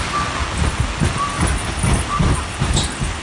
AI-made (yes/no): no